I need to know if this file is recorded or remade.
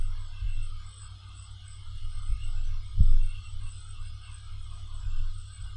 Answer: recorded